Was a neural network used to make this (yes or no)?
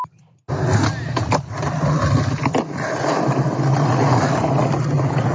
no